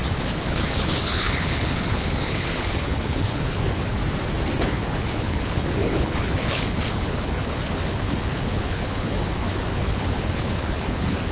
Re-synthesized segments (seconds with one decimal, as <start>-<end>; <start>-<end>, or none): 0.0-4.0; 4.6-11.3